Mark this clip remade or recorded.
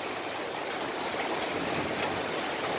recorded